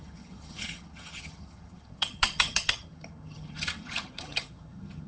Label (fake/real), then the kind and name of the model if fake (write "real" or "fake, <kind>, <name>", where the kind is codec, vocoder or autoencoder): fake, vocoder, HiFi-GAN